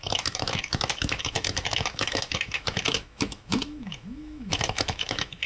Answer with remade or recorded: remade